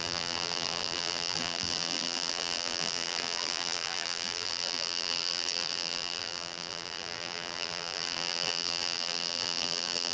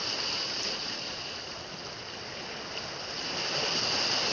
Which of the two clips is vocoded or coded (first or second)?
first